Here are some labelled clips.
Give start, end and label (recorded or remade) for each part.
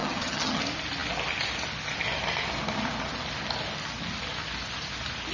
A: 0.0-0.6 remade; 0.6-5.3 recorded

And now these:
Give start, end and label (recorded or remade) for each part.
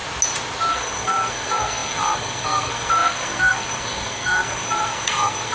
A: 0.0-0.7 recorded; 0.7-5.5 remade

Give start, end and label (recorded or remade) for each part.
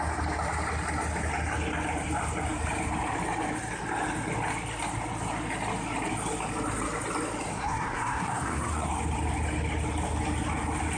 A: 0.0-7.5 recorded; 7.5-8.9 remade; 8.9-11.0 recorded